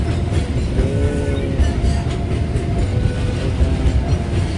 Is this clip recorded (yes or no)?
yes